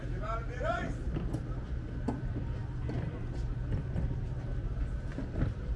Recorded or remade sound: remade